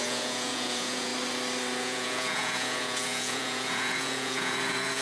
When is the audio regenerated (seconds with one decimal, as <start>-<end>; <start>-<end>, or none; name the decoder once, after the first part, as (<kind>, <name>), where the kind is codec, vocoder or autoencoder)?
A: 0.0-1.1 (vocoder, Vocos); 1.8-5.0